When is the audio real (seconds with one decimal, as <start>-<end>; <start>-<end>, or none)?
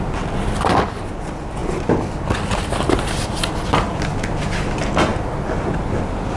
0.0-6.4